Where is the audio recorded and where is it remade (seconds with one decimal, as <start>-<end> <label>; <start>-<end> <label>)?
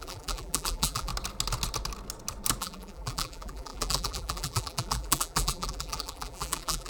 0.0-1.1 remade; 1.1-2.6 recorded; 2.6-6.9 remade